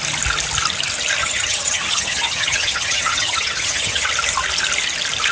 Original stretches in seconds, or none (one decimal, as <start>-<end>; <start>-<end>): 0.0-1.2; 4.1-5.3